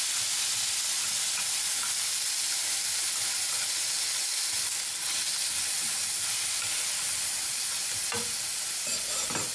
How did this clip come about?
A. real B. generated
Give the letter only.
A